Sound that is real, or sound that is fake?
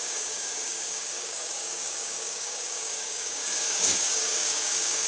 fake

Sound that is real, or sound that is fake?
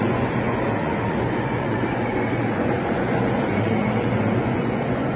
fake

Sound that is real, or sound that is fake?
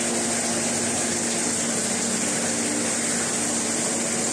real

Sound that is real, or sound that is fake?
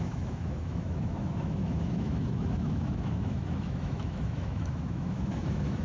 fake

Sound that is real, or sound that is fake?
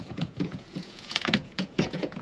fake